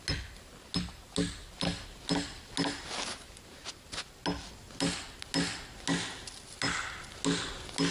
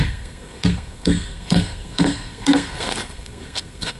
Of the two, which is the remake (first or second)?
second